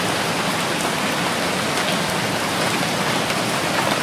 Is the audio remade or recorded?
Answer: recorded